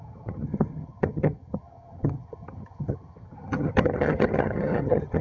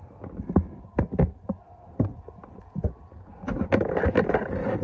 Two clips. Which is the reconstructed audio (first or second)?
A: first